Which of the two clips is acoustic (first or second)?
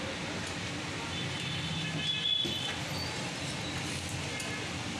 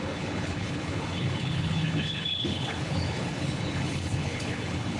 first